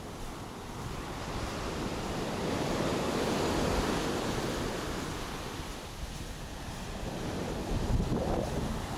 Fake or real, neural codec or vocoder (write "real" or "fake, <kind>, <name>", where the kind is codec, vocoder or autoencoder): real